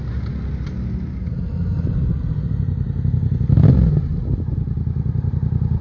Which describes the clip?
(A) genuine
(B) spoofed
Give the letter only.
A